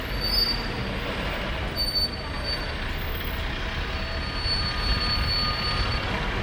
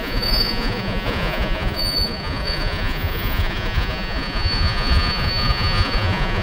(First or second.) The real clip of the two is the first